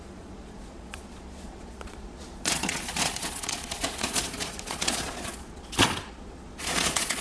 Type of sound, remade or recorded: remade